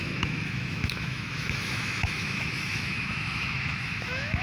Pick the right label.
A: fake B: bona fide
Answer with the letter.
A